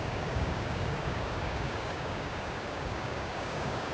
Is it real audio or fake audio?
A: fake